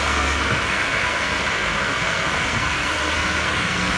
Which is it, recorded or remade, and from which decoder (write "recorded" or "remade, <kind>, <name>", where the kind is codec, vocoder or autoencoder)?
remade, codec, SNAC